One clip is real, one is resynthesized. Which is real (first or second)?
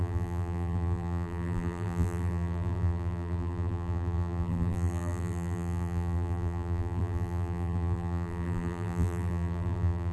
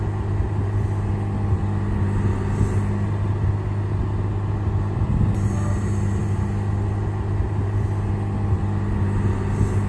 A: second